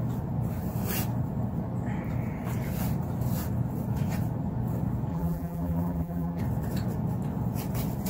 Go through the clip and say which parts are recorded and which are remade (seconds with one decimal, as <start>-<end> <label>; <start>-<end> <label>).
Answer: 0.0-5.1 recorded; 5.1-6.4 remade; 6.4-8.1 recorded